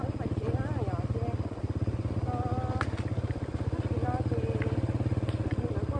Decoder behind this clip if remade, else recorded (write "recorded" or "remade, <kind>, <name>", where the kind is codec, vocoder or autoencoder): recorded